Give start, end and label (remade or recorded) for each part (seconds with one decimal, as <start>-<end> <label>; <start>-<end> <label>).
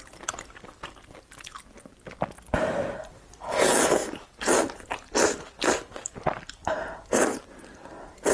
0.0-8.3 recorded